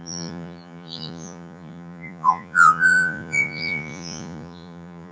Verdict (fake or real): fake